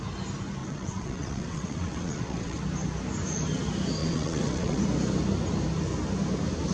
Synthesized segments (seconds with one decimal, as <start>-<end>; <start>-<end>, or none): 0.6-2.6; 4.0-4.8